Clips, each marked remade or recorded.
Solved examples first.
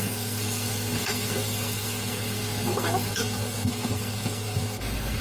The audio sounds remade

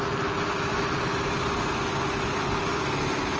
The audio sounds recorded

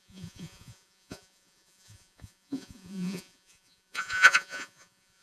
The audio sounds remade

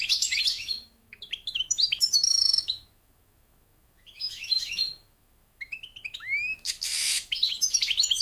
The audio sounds remade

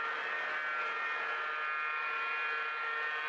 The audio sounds recorded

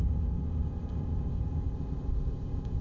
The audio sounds remade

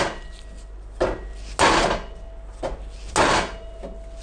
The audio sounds recorded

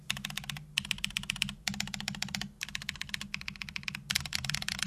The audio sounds recorded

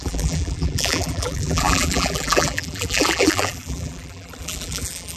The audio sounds remade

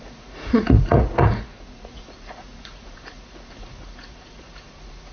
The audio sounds remade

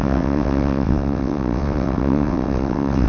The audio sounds remade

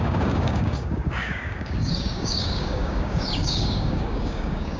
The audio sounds remade